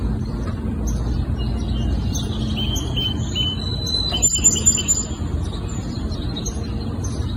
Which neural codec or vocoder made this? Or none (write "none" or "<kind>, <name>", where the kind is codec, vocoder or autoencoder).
none